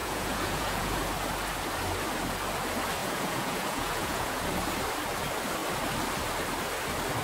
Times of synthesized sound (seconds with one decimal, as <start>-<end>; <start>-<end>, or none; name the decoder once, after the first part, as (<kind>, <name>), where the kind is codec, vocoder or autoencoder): 0.0-1.0 (vocoder, Vocos); 3.0-4.4